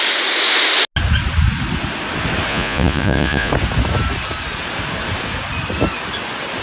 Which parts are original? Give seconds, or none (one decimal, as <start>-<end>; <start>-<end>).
0.0-2.5; 3.5-6.6